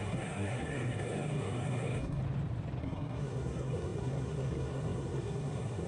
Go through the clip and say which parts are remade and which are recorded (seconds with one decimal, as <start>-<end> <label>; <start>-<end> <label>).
0.0-2.2 remade; 2.2-2.8 recorded; 2.8-5.9 remade